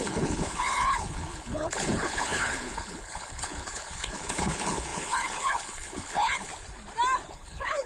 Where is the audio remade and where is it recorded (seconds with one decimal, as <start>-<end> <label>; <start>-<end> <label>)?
0.0-6.5 remade; 6.5-7.3 recorded; 7.3-7.9 remade